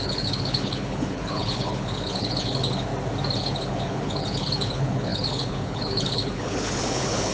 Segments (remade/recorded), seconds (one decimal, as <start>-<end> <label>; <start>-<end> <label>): 0.0-2.9 remade; 2.9-3.4 recorded; 3.4-7.3 remade